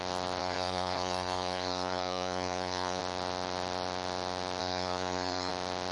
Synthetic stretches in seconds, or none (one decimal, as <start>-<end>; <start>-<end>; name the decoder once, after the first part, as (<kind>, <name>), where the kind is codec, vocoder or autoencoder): 0.4-3.0 (codec, SNAC); 4.6-5.5